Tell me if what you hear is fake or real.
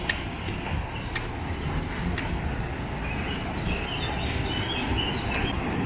real